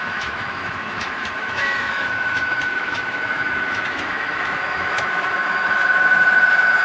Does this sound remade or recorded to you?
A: remade